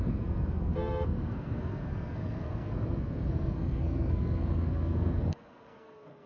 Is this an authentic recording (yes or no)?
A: no